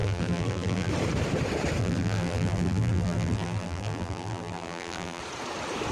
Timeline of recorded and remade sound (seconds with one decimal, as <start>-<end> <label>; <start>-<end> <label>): 0.0-0.9 remade; 0.9-1.8 recorded; 1.8-5.2 remade; 5.2-5.9 recorded